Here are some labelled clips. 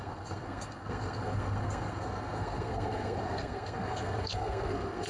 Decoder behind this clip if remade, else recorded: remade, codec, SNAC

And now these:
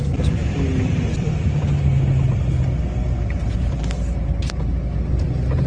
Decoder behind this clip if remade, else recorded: recorded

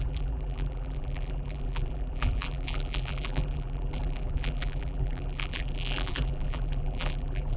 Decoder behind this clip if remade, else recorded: remade, vocoder, BigVGAN v2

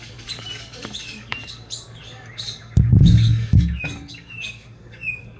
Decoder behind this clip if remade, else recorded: remade, codec, DAC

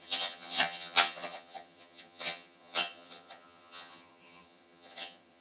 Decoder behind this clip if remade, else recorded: remade, vocoder, HiFi-GAN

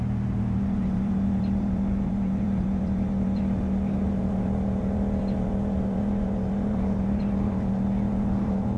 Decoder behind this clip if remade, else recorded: remade, vocoder, BigVGAN v2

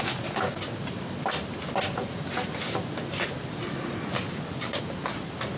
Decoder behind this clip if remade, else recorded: recorded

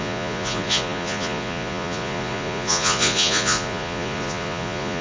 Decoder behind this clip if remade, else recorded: remade, vocoder, Vocos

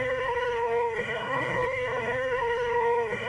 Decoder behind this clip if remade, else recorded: remade, codec, SNAC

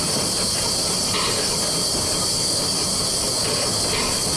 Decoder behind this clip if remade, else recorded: recorded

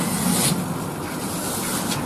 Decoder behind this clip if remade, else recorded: recorded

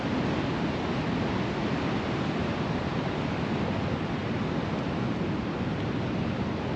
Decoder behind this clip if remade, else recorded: recorded